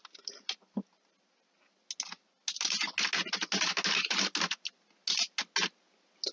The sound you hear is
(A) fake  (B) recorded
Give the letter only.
B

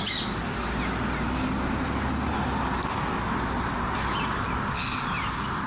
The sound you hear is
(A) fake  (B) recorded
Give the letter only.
B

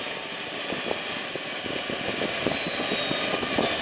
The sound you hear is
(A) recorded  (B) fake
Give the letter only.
A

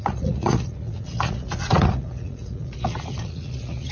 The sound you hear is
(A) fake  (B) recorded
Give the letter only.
A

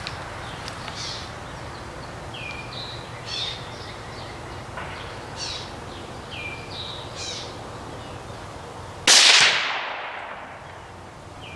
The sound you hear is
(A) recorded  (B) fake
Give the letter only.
A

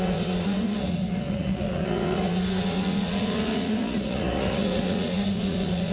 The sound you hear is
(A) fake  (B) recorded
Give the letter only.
A